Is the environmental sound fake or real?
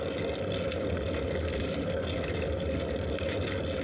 real